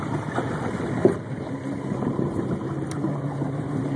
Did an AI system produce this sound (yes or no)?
no